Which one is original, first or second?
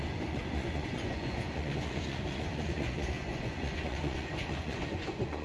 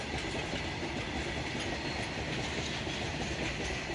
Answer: second